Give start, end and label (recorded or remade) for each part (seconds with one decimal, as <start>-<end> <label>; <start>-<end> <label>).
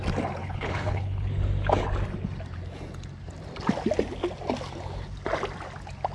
0.0-0.4 recorded; 0.4-1.3 remade; 1.3-6.1 recorded